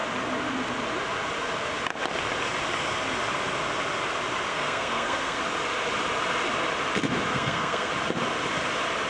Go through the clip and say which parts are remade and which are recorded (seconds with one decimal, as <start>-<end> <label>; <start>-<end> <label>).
0.0-4.5 recorded; 4.5-5.4 remade; 5.4-7.3 recorded; 7.3-7.9 remade; 7.9-9.1 recorded